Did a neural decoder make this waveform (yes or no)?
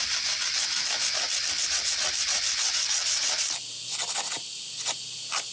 no